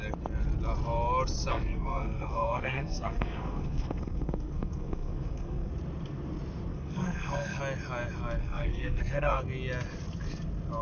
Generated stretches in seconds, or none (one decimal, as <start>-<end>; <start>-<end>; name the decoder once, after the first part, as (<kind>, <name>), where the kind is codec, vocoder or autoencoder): 1.5-5.7 (codec, SNAC); 6.7-7.6; 8.4-9.4